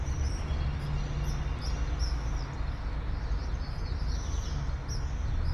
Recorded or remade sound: recorded